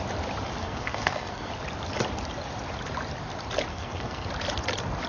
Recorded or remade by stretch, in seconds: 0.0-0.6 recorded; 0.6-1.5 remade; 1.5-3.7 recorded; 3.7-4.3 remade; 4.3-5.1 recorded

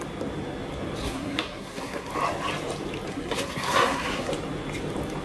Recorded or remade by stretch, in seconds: 0.0-1.0 recorded; 1.0-2.1 remade; 2.1-3.1 recorded; 3.1-4.3 remade; 4.3-5.2 recorded

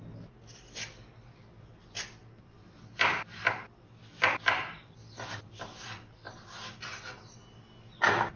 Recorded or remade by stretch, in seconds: 0.0-8.4 recorded